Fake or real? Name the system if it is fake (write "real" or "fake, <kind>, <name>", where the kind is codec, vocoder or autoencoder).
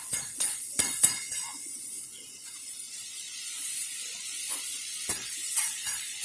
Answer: fake, vocoder, Vocos